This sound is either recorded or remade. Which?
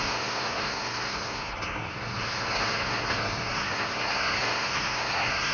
remade